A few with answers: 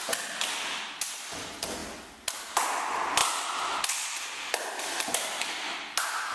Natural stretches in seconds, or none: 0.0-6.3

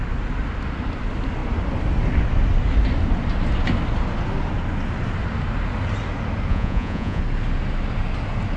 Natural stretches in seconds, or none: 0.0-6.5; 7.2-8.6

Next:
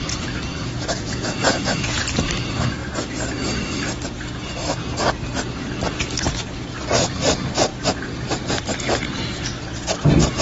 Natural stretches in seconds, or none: 0.0-0.6; 2.0-10.4

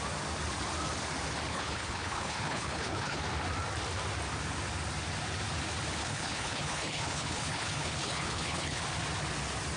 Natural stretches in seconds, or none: 0.0-1.5; 3.2-6.0; 8.8-9.8

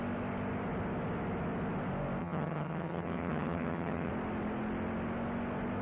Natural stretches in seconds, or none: 0.0-2.2; 4.1-5.8

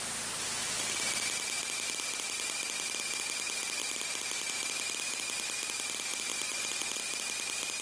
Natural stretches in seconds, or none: 0.0-6.3; 7.0-7.8